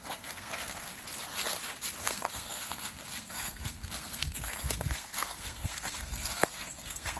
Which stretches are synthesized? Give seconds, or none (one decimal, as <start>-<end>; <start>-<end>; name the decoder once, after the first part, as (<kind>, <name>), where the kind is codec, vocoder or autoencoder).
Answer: 0.0-0.9 (codec, SNAC); 2.0-7.2

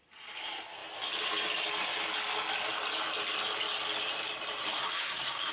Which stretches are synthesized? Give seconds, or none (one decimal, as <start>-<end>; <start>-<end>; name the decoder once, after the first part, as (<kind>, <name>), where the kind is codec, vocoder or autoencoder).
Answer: 4.7-5.5 (codec, DAC)

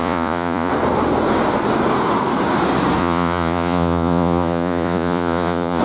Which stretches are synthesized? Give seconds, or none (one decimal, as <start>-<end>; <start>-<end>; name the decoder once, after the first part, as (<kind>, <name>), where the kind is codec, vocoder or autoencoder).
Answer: 0.0-0.7 (vocoder, Vocos); 3.0-5.8

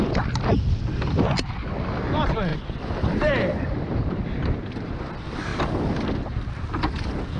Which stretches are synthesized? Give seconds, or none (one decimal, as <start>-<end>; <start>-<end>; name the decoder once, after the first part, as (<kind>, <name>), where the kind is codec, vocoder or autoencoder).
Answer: 2.5-5.0 (vocoder, BigVGAN v2); 5.5-6.0

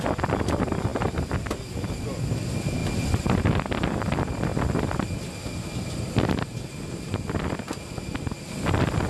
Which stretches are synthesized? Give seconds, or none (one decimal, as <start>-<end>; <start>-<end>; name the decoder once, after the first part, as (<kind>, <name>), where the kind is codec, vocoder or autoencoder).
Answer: none

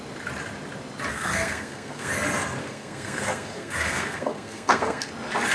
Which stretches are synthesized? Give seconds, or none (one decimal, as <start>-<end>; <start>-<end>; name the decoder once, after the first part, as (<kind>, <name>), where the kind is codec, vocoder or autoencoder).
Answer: 1.1-2.1 (codec, SNAC); 2.6-5.1